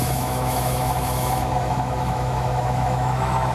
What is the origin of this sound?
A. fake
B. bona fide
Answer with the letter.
A